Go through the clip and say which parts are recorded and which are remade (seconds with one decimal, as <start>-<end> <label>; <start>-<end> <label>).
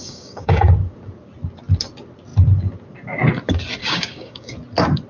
0.0-0.7 remade; 0.7-3.8 recorded; 3.8-4.5 remade; 4.5-5.1 recorded